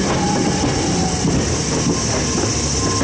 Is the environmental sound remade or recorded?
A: recorded